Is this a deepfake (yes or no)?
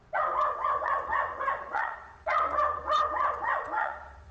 yes